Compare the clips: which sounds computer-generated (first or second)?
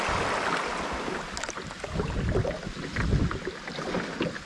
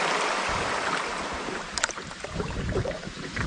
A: second